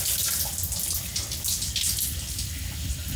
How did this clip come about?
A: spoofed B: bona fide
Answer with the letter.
B